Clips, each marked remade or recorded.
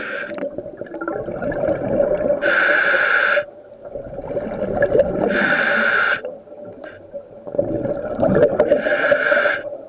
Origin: recorded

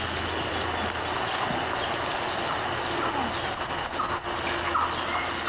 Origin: recorded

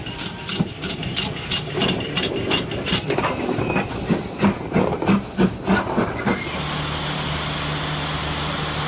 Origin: recorded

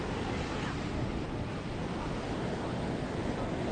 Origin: recorded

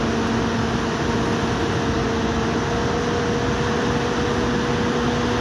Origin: recorded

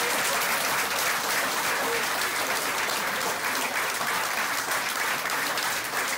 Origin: recorded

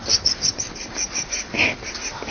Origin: recorded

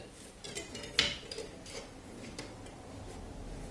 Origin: recorded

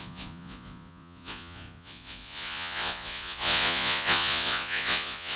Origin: remade